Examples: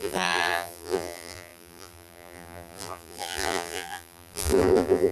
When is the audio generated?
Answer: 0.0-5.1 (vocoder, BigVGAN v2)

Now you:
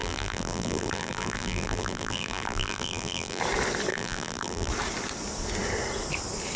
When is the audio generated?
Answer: 0.0-3.4 (vocoder, BigVGAN v2); 3.9-4.7

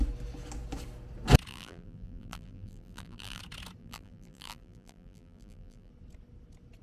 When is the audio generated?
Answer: 1.5-3.4 (vocoder, BigVGAN v2); 3.8-5.9

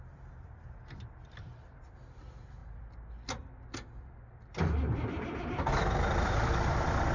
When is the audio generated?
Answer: 0.0-2.6 (vocoder, BigVGAN v2); 3.1-7.1

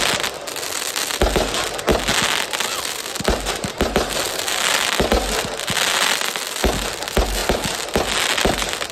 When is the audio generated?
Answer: none

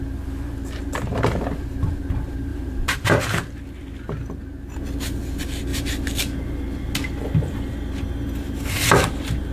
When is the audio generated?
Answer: 2.5-3.2 (vocoder, BigVGAN v2)

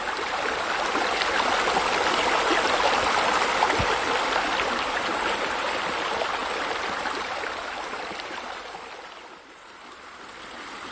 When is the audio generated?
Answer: none